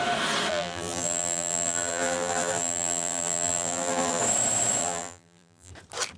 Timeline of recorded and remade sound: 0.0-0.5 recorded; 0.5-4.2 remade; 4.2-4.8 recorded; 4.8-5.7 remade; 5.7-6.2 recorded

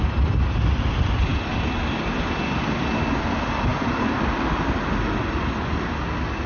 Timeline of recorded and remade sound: 0.0-6.5 recorded

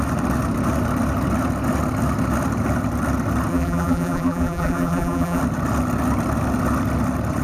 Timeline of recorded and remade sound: 0.0-3.5 recorded; 3.5-5.4 remade; 5.4-7.4 recorded

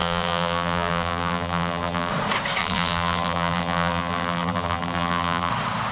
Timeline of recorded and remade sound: 0.0-2.1 remade; 2.1-2.6 recorded; 2.6-5.5 remade; 5.5-5.9 recorded